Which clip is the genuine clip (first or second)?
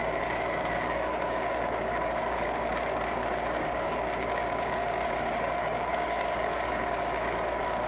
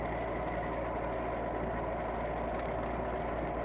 second